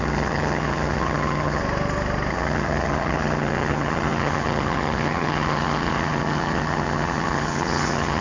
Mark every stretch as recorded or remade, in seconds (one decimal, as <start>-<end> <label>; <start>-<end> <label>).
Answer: 0.0-1.6 remade; 1.6-2.3 recorded; 2.3-8.2 remade